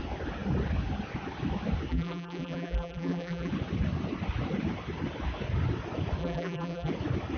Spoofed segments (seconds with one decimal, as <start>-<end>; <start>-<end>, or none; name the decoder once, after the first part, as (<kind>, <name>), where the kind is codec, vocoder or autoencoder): 1.9-3.5 (vocoder, BigVGAN v2); 6.2-6.9